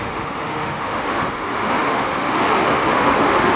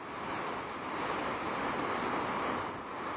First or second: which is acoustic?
second